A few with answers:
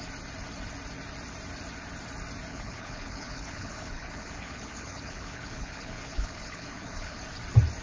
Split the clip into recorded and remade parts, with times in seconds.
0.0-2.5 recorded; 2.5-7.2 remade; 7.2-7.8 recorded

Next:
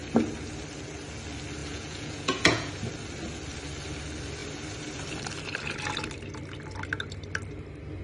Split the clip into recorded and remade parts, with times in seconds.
0.0-1.6 recorded; 1.6-2.7 remade; 2.7-8.0 recorded

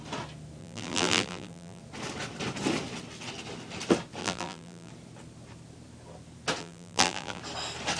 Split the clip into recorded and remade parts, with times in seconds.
0.0-0.6 recorded; 0.6-1.8 remade; 1.8-4.2 recorded; 4.2-4.9 remade; 4.9-6.6 recorded; 6.6-7.4 remade; 7.4-8.0 recorded

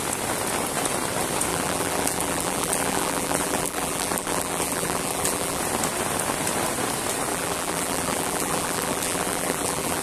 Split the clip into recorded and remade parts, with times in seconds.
0.0-1.5 recorded; 1.5-5.6 remade; 5.6-7.3 recorded; 7.3-10.0 remade

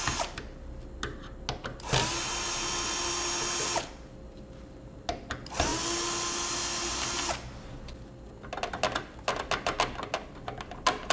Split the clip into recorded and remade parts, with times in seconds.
0.0-11.1 recorded

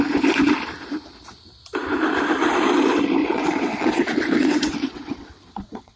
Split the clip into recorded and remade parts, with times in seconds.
0.0-3.2 recorded; 3.2-6.0 remade

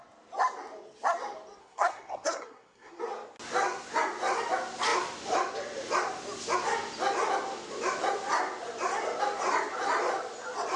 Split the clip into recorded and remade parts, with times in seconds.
0.0-1.6 recorded; 1.6-3.0 remade; 3.0-10.8 recorded

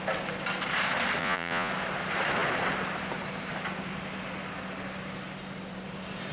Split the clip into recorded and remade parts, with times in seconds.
0.0-1.2 recorded; 1.2-1.7 remade; 1.7-6.3 recorded